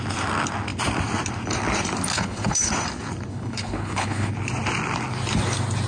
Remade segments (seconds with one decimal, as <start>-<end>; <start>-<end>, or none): 2.1-2.7; 3.3-4.3